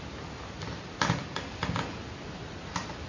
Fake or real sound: real